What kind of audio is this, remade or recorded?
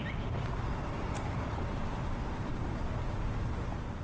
remade